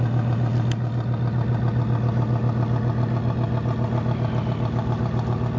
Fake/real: real